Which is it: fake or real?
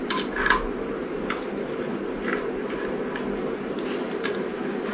real